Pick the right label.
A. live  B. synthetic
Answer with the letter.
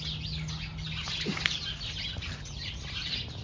A